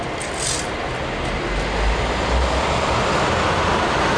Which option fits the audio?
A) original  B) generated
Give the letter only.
A